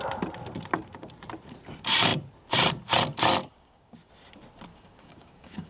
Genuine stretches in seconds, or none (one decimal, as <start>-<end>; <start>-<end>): 0.0-3.4; 4.1-4.7